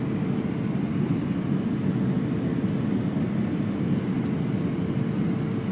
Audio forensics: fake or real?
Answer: real